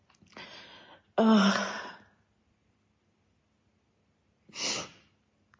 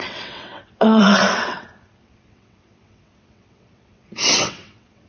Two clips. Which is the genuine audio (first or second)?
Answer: first